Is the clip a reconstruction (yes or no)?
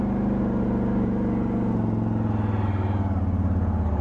no